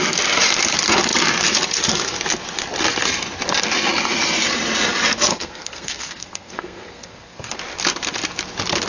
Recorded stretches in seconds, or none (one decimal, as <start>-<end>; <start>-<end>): 0.0-5.3; 7.6-8.9